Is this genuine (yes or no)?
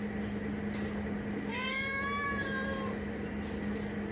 yes